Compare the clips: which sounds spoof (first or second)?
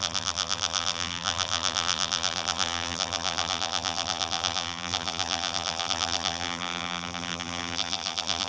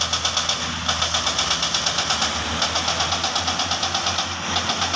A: first